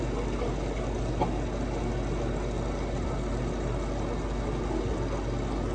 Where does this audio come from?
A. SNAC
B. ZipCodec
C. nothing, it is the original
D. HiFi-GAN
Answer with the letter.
C